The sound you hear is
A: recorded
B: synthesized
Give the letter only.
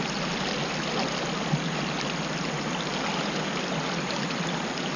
A